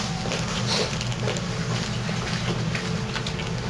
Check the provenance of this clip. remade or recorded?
recorded